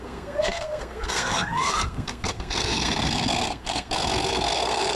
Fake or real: fake